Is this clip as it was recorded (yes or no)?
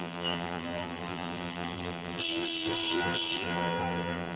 no